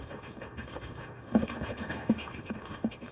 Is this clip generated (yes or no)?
yes